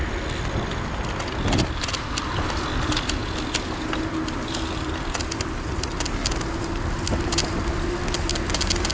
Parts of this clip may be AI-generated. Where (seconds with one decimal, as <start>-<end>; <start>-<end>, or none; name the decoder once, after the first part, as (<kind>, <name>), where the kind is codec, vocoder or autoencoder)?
none